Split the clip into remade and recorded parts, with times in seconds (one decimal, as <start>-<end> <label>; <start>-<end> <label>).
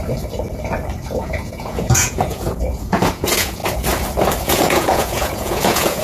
0.0-1.1 recorded; 1.1-3.6 remade; 3.6-4.4 recorded; 4.4-6.0 remade